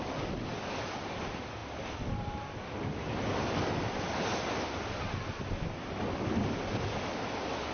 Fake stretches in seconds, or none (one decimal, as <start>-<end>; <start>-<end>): none